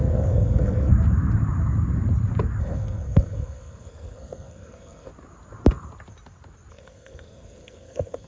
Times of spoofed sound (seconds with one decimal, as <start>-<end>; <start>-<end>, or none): 0.0-0.9; 2.6-5.1; 6.7-8.3